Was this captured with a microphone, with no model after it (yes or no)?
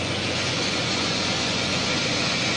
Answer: no